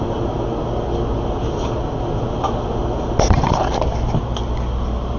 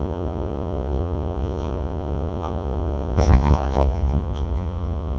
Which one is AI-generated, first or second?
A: second